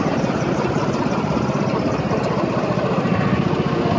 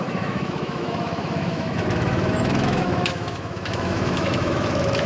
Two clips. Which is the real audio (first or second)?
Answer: first